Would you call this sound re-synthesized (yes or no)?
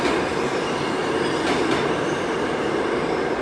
no